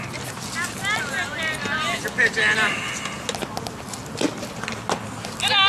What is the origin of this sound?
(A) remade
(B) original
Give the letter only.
B